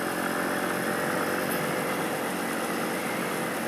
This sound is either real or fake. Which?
real